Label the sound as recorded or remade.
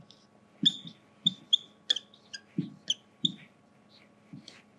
recorded